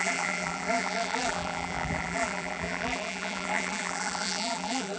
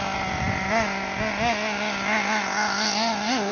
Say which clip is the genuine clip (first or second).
second